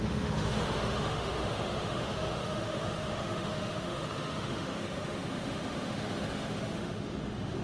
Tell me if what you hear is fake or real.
fake